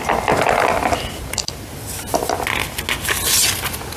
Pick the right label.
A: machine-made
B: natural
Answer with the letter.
B